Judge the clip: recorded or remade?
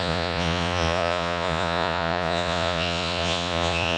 remade